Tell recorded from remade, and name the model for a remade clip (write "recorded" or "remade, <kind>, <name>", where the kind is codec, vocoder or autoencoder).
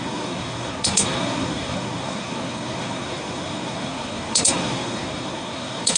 remade, codec, SNAC